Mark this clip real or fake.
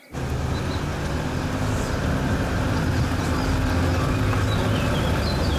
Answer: real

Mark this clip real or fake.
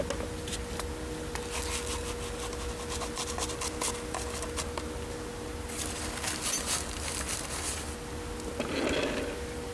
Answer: real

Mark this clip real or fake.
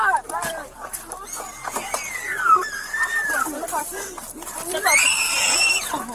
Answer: fake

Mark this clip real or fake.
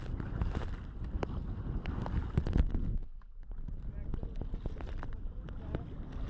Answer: real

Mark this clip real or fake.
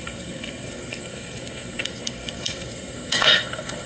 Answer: fake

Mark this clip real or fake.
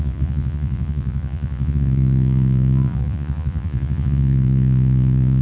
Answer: fake